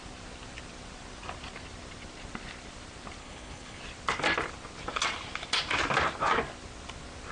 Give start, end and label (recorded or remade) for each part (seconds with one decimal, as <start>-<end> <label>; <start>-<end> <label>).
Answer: 0.0-3.2 recorded; 3.2-3.8 remade; 3.8-7.3 recorded